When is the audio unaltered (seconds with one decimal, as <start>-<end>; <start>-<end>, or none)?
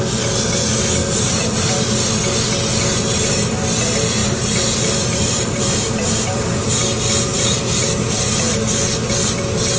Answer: 0.0-1.0; 2.0-4.2; 6.7-7.3; 8.6-9.8